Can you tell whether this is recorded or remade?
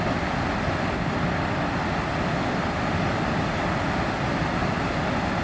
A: recorded